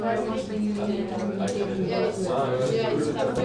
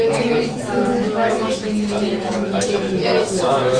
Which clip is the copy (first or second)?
second